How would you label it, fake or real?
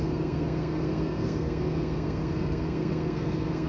fake